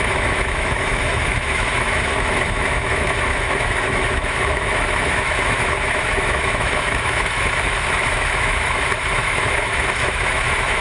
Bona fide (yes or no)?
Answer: no